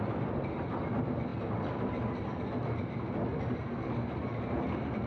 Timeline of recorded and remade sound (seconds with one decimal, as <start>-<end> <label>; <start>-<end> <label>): 0.0-5.1 recorded